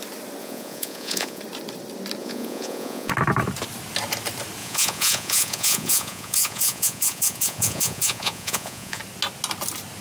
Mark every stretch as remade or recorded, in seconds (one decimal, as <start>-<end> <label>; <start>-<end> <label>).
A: 0.0-0.4 recorded; 0.4-1.4 remade; 1.4-2.2 recorded; 2.2-3.1 remade; 3.1-4.6 recorded; 4.6-9.0 remade; 9.0-10.0 recorded